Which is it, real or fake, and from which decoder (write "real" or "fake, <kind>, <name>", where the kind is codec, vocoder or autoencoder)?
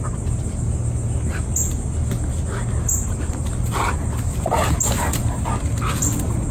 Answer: real